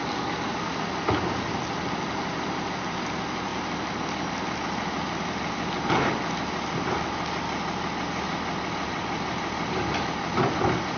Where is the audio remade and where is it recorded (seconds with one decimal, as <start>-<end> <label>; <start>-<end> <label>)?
0.0-11.0 recorded

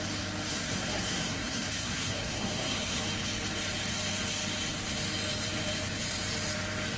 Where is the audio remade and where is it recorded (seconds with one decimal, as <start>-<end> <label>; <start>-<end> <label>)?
0.0-0.5 recorded; 0.5-3.0 remade; 3.0-7.0 recorded